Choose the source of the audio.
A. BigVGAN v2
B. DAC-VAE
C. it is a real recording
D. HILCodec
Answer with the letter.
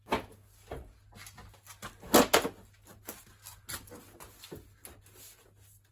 C